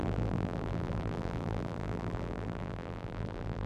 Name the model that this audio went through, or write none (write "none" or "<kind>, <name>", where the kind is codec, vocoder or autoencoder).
vocoder, BigVGAN v2